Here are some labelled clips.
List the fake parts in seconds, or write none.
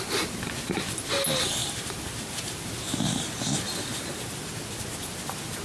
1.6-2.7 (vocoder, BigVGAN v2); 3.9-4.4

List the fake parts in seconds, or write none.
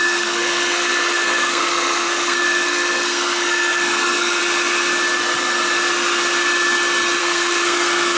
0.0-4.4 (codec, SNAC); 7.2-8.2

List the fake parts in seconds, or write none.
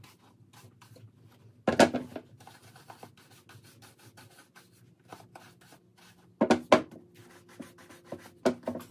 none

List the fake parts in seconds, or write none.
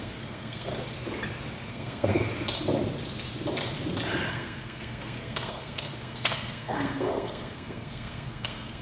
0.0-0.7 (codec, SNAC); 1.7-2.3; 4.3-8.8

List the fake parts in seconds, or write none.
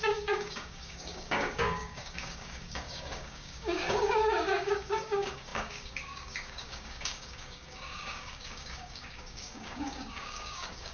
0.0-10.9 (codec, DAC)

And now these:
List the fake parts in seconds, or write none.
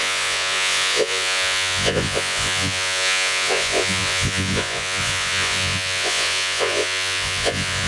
0.0-7.9 (vocoder, Vocos)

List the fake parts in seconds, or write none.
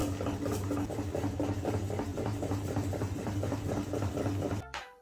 2.1-4.1 (vocoder, BigVGAN v2)